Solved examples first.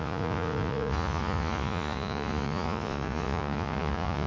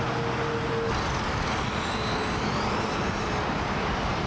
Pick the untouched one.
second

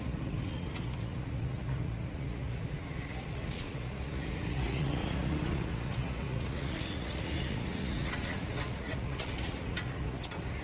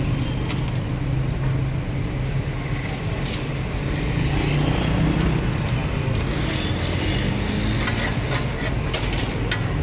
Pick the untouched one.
second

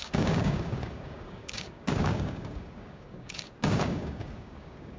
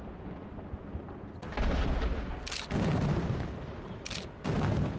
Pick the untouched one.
second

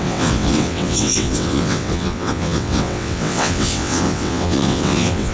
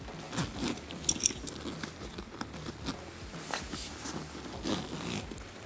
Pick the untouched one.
second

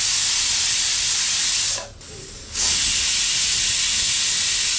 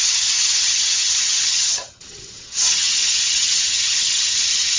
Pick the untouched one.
first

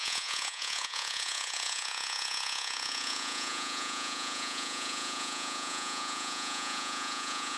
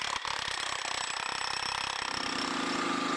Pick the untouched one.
second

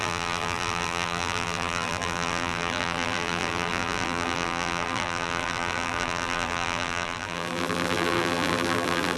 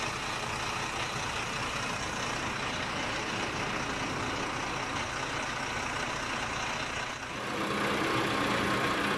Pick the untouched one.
second